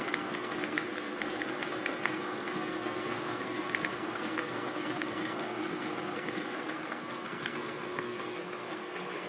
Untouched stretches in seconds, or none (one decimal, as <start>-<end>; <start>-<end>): none